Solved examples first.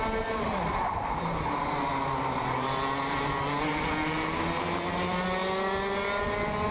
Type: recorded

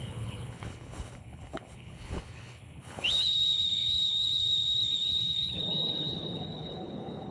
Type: remade